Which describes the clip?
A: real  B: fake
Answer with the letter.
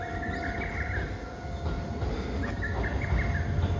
A